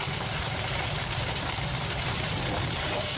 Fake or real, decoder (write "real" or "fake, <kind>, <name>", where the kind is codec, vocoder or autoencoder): fake, vocoder, BigVGAN v2